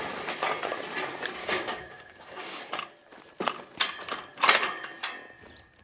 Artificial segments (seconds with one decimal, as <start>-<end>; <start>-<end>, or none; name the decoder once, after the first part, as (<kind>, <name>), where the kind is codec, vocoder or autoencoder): 1.4-2.6 (codec, DAC)